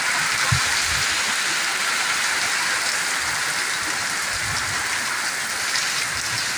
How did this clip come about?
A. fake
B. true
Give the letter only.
B